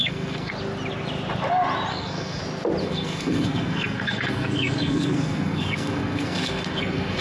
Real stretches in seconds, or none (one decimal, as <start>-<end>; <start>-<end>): 0.5-1.9; 2.4-2.8